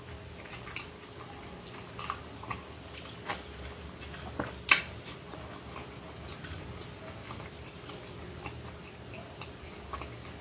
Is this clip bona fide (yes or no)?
yes